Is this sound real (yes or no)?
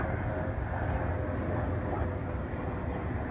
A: yes